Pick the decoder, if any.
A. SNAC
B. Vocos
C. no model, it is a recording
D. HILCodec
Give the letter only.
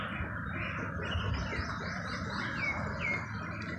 C